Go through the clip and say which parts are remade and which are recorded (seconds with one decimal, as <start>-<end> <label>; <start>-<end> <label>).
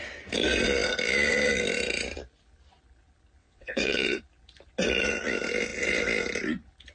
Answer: 0.0-3.4 recorded; 3.4-4.2 remade; 4.2-6.9 recorded